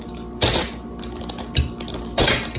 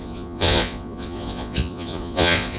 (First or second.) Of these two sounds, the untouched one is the first